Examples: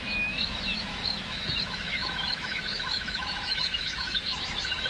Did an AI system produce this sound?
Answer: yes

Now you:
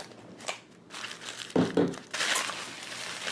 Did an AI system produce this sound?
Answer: no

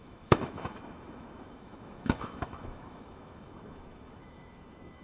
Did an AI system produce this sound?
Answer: yes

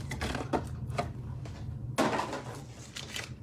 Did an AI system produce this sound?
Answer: no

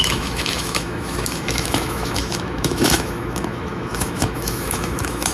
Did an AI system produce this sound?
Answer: yes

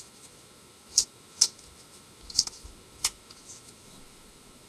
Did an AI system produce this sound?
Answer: yes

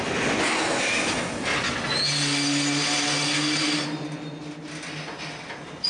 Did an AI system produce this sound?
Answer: no